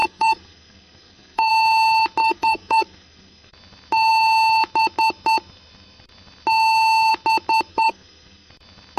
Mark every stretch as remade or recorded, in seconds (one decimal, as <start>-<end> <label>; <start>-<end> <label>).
0.0-1.5 remade; 1.5-2.2 recorded; 2.2-3.5 remade; 3.5-7.7 recorded; 7.7-8.5 remade; 8.5-9.0 recorded